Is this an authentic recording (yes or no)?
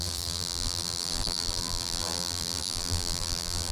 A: no